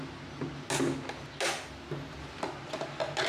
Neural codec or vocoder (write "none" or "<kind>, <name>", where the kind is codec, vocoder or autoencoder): none